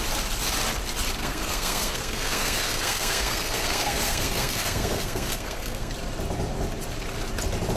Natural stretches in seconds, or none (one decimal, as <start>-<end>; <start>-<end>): 0.0-1.2; 5.9-7.8